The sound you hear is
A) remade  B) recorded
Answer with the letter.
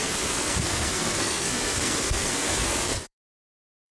A